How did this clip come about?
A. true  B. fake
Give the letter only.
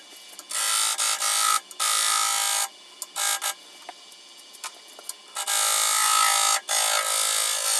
A